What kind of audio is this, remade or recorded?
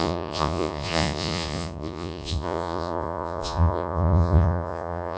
remade